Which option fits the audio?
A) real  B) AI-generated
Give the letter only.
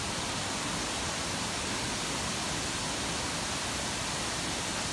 A